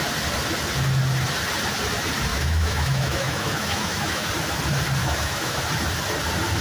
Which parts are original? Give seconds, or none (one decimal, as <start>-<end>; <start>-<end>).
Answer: 0.0-2.3; 4.3-5.0; 5.6-6.6